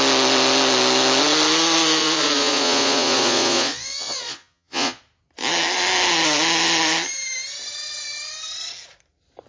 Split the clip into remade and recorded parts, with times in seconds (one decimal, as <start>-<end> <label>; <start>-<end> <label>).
0.0-2.0 recorded; 2.0-5.0 remade; 5.0-9.5 recorded